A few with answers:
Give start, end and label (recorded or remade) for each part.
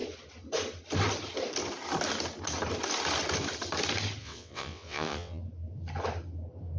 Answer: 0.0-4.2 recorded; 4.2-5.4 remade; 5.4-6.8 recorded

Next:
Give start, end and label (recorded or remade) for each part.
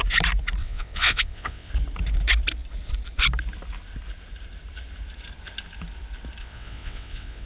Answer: 0.0-0.6 recorded; 0.6-1.7 remade; 1.7-6.4 recorded; 6.4-7.5 remade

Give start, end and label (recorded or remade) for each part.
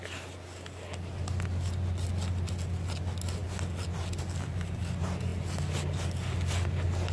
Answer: 0.0-7.1 recorded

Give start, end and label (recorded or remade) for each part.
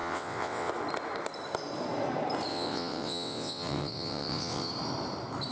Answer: 0.0-0.7 remade; 0.7-2.5 recorded; 2.5-4.7 remade; 4.7-5.5 recorded